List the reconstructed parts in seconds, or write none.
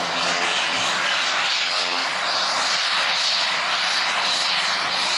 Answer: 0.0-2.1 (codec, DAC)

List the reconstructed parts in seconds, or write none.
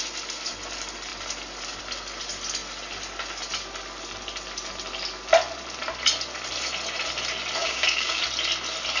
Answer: 7.6-8.2 (codec, DAC)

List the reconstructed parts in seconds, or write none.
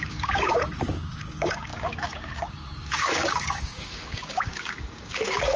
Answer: 0.0-5.6 (codec, DAC)